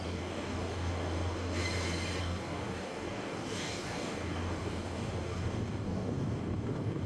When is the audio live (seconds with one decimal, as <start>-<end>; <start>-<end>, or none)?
1.6-2.2